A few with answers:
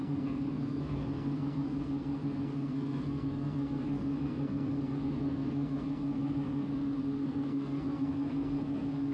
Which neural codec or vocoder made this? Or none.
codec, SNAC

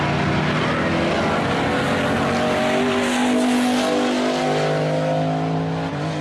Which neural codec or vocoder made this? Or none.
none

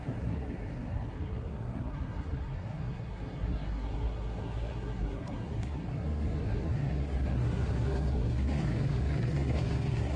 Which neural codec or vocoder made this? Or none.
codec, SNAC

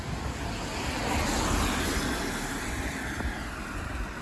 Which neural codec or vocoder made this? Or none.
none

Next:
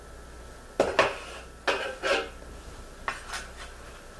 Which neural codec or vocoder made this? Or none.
none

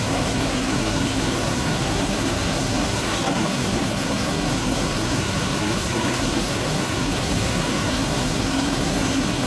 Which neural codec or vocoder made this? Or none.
codec, SNAC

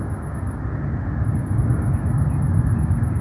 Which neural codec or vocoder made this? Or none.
none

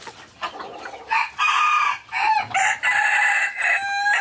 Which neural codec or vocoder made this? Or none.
none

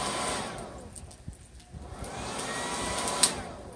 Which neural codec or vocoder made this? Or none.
none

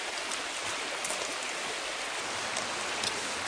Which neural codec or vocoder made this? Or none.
none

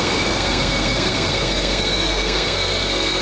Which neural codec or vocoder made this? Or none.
codec, SNAC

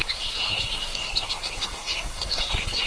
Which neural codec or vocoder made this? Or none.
codec, SNAC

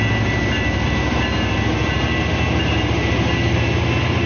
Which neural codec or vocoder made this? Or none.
none